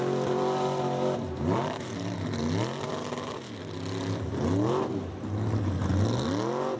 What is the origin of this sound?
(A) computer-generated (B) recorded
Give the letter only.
B